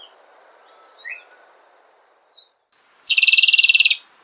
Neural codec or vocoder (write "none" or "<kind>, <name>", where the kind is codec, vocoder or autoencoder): none